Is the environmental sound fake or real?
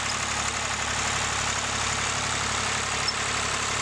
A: real